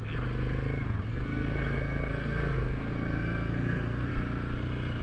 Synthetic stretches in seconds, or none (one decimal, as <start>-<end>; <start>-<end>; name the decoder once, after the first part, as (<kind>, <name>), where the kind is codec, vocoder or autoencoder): 1.1-4.1 (codec, SNAC)